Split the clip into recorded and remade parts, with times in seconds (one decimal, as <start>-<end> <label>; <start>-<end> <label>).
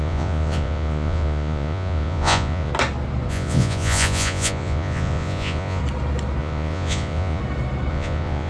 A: 0.0-2.7 remade; 2.7-3.3 recorded; 3.3-5.8 remade; 5.8-6.4 recorded; 6.4-7.4 remade; 7.4-7.9 recorded; 7.9-8.5 remade